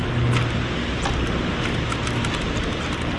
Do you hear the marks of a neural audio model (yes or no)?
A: no